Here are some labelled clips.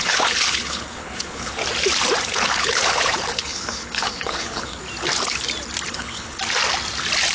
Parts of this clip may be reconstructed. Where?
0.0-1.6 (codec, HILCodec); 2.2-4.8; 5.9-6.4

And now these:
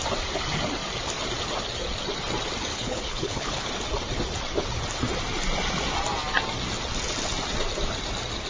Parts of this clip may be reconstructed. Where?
2.7-3.7 (codec, HILCodec)

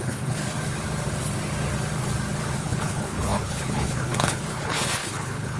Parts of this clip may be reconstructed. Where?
0.0-0.4 (codec, HILCodec); 2.6-5.6

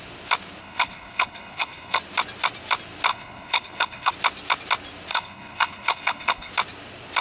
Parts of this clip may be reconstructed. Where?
0.6-2.0 (codec, HILCodec); 3.1-4.1; 5.1-6.5

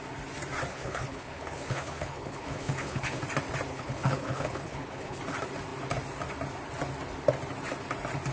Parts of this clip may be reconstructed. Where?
0.7-3.2 (codec, HILCodec); 3.7-5.2

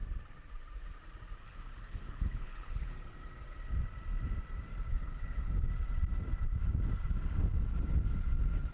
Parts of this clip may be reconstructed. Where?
1.4-2.9 (codec, HILCodec); 4.9-5.7

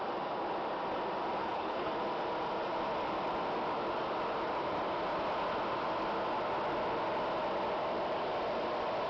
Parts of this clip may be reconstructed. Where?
1.4-1.9 (codec, HILCodec)